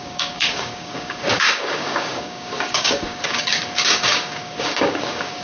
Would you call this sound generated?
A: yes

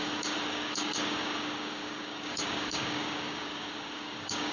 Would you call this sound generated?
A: yes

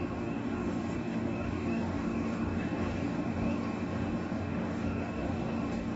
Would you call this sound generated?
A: yes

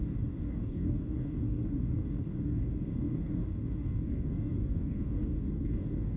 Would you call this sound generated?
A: yes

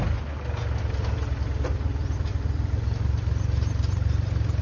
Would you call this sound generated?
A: no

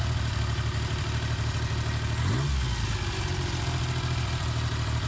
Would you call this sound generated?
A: no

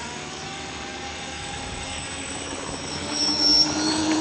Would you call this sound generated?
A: yes